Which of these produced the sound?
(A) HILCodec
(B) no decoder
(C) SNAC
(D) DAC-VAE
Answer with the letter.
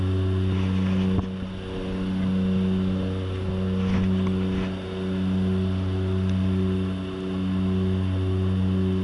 B